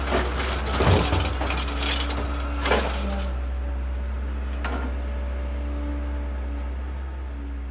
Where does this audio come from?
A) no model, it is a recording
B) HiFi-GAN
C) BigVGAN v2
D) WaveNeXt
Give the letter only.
A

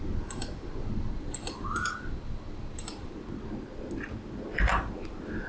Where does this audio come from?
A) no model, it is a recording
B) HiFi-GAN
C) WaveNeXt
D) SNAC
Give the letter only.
A